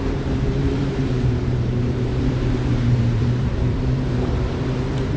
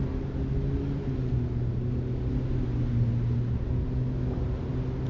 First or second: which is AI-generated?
first